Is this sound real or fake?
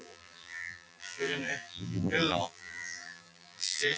fake